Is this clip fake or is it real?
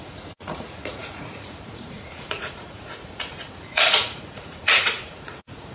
fake